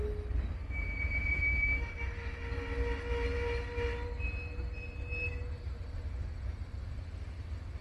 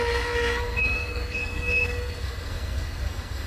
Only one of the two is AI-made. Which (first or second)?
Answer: second